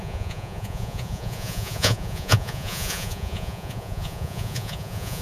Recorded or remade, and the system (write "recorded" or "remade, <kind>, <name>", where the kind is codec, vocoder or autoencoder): remade, vocoder, Vocos